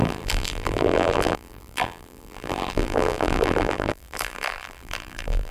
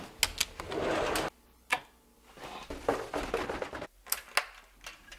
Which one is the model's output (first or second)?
first